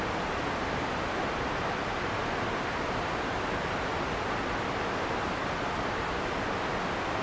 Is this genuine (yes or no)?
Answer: yes